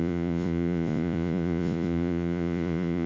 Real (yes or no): no